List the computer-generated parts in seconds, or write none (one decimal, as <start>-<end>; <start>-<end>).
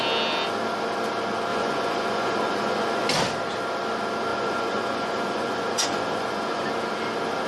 1.5-3.1; 4.3-6.7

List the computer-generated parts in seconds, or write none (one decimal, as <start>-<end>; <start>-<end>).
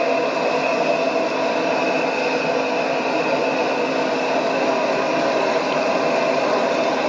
none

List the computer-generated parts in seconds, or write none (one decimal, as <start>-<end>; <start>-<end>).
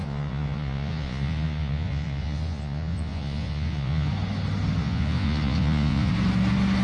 0.0-4.1; 4.8-6.1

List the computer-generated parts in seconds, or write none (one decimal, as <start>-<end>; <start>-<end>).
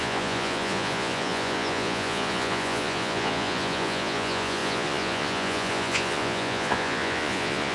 0.0-7.7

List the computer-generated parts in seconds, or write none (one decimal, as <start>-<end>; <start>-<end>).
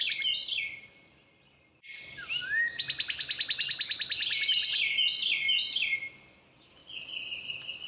none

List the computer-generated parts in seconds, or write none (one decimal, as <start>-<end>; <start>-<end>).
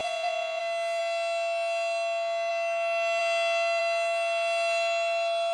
0.0-0.6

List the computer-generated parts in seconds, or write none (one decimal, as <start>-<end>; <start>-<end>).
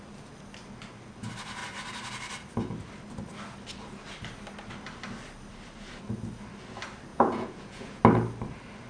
7.1-8.0